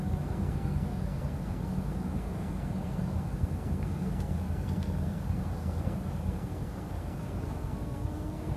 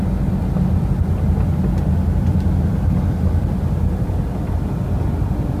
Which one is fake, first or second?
first